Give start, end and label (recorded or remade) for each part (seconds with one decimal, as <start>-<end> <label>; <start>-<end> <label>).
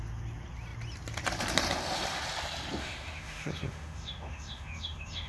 0.0-2.8 recorded; 2.8-5.3 remade